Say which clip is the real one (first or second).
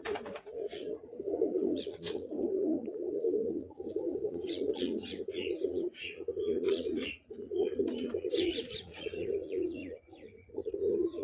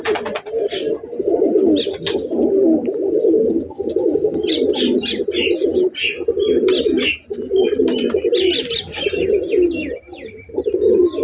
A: second